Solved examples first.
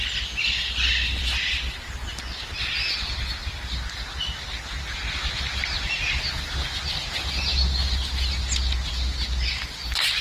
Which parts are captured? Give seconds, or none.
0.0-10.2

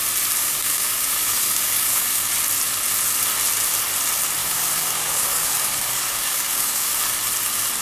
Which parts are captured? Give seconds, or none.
0.0-0.4; 2.3-4.4; 6.9-7.8

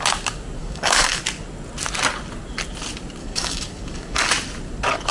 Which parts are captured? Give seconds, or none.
0.0-0.6; 1.2-3.2; 4.3-5.1